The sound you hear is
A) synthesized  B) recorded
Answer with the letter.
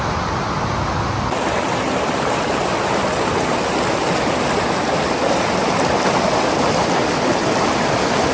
B